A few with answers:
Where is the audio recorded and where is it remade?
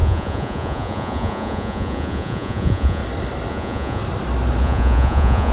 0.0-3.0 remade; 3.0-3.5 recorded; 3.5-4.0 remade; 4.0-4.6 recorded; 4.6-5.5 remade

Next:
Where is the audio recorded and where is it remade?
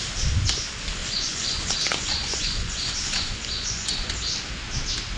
0.0-1.0 recorded; 1.0-4.1 remade; 4.1-5.2 recorded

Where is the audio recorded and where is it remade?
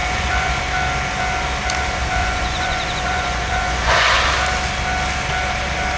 0.0-0.6 remade; 0.6-2.2 recorded; 2.2-4.2 remade; 4.2-6.0 recorded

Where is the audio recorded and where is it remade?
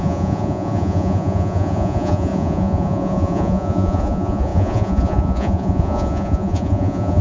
0.0-7.2 remade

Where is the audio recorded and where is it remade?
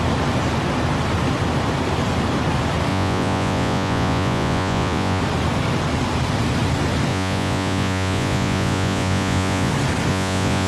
0.0-2.9 recorded; 2.9-5.2 remade; 5.2-7.1 recorded; 7.1-9.7 remade; 9.7-10.1 recorded; 10.1-10.7 remade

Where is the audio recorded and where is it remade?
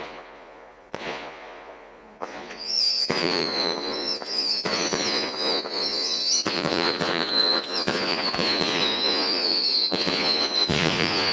0.0-11.3 remade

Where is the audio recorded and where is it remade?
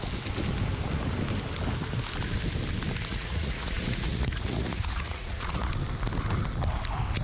0.0-3.1 recorded; 3.1-5.7 remade; 5.7-7.2 recorded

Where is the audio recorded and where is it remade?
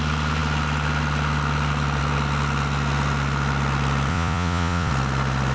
0.0-4.1 recorded; 4.1-4.9 remade; 4.9-5.5 recorded